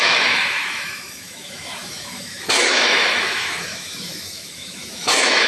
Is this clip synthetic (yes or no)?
yes